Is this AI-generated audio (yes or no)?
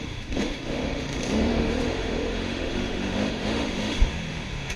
yes